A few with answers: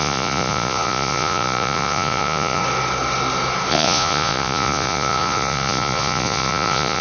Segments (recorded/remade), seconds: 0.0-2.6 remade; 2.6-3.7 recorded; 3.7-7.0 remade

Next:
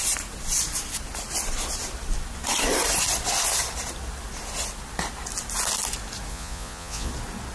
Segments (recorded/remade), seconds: 0.0-6.3 recorded; 6.3-7.1 remade; 7.1-7.5 recorded